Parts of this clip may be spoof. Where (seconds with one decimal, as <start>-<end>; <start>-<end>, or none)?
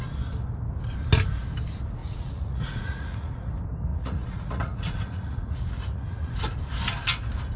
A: 2.0-3.5; 3.9-6.4